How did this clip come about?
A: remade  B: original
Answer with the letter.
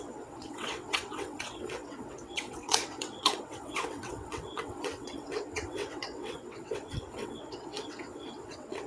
A